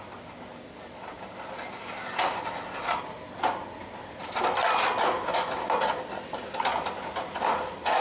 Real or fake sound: real